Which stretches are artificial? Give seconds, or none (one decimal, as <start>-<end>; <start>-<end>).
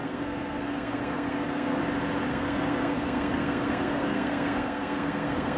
0.0-1.8; 2.3-5.6